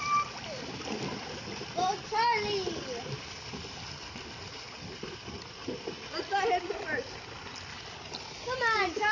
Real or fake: real